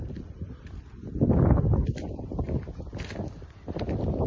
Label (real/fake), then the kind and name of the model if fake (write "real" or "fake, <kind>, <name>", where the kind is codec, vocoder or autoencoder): real